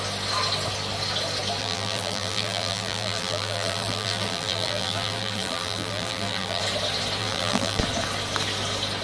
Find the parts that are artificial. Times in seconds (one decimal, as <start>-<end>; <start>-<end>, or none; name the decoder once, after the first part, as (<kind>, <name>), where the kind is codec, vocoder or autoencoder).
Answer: 1.6-6.6 (vocoder, BigVGAN v2); 7.2-7.8